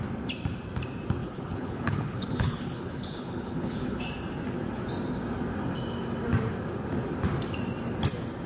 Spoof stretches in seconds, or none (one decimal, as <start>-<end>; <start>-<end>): 1.2-4.0